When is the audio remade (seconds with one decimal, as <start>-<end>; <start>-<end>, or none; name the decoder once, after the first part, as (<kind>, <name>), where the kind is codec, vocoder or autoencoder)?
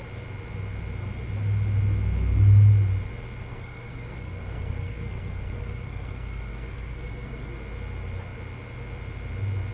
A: 3.5-7.5 (codec, SNAC)